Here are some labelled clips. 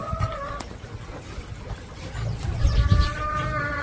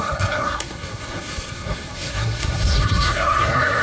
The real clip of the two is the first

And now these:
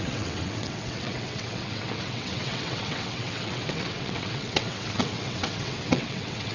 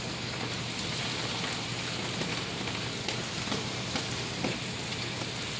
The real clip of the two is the second